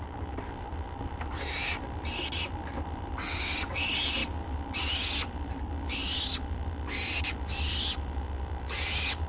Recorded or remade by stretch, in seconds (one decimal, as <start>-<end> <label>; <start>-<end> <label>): 0.0-9.3 recorded